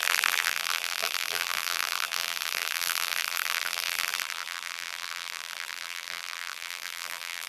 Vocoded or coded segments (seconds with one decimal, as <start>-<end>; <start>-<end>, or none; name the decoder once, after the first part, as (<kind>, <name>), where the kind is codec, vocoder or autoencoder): 0.0-7.5 (vocoder, BigVGAN v2)